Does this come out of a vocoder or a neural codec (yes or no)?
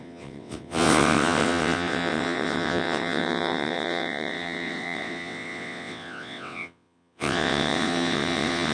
yes